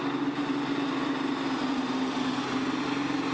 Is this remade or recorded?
recorded